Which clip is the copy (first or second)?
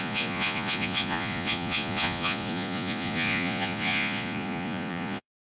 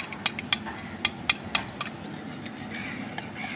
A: first